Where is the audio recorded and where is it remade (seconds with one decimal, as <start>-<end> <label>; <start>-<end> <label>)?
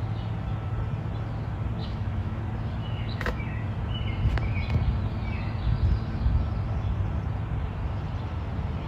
0.0-1.8 recorded; 1.8-2.4 remade; 2.4-2.8 recorded; 2.8-3.4 remade; 3.4-8.9 recorded